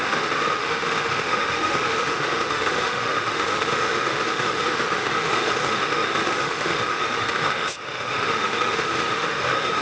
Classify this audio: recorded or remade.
remade